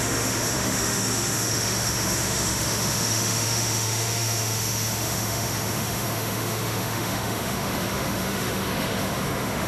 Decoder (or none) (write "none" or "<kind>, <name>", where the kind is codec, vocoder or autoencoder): autoencoder, DAC-VAE